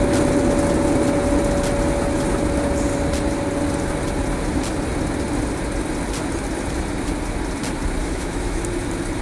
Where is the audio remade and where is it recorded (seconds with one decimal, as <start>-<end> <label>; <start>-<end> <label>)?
0.0-8.0 recorded; 8.0-8.6 remade; 8.6-9.2 recorded